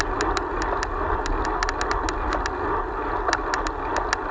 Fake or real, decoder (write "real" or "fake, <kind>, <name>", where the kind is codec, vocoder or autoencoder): real